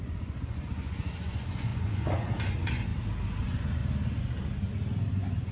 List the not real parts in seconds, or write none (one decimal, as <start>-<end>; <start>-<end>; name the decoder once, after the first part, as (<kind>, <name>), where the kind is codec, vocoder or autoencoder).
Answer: 0.0-2.9 (vocoder, Vocos); 3.4-3.8; 5.1-5.5